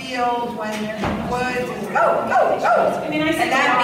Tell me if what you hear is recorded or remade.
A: recorded